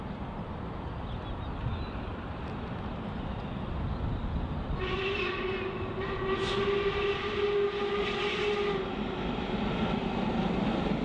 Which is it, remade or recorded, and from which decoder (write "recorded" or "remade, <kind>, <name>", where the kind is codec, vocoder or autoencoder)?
recorded